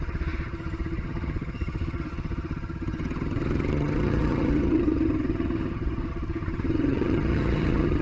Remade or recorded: remade